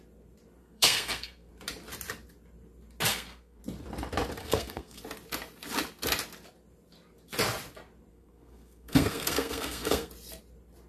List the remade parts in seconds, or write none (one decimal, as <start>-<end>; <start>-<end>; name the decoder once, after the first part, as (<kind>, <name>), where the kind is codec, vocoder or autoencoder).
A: 0.6-1.5 (codec, SNAC); 3.1-3.6; 4.4-5.0; 8.1-10.1